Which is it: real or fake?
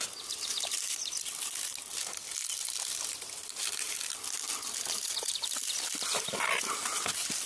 real